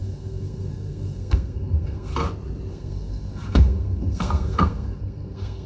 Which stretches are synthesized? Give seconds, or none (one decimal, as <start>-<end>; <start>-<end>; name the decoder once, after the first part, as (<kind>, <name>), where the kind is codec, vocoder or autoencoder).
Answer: 0.0-2.1 (codec, SNAC); 2.7-5.7